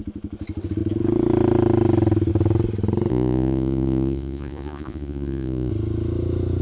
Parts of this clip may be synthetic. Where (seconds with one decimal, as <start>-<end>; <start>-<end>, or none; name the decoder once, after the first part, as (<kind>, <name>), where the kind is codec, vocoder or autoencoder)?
3.1-5.7 (vocoder, Vocos)